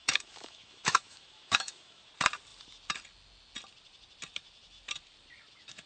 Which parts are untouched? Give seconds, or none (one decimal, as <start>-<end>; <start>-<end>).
2.1-5.9

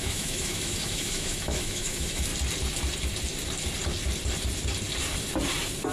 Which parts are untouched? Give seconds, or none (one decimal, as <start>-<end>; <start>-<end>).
2.3-5.9

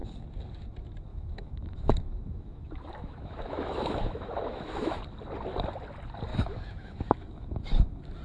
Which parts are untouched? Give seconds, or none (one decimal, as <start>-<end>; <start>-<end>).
0.0-1.1; 5.0-6.3

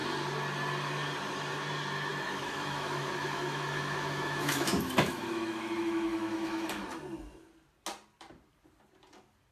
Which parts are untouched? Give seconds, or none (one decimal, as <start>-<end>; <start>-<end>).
0.0-2.1; 6.8-9.5

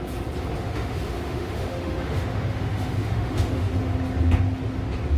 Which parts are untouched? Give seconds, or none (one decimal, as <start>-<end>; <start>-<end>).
0.0-0.6; 3.7-5.2